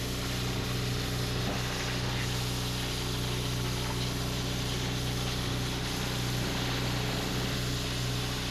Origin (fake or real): real